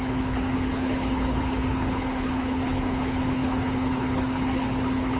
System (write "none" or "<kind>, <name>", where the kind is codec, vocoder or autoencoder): codec, HILCodec